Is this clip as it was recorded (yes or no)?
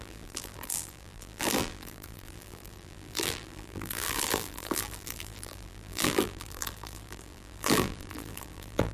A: no